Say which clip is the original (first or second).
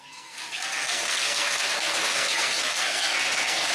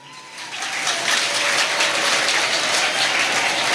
second